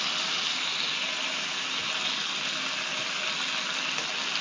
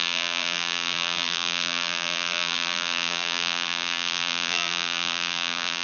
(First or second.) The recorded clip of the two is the first